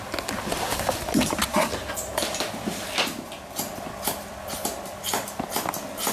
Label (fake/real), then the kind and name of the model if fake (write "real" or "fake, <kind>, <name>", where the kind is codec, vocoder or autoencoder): real